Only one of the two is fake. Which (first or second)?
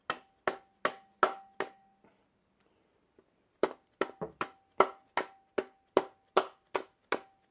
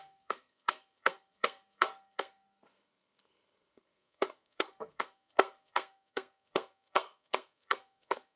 second